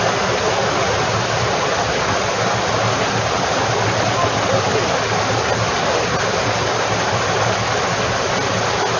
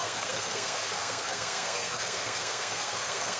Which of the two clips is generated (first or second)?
second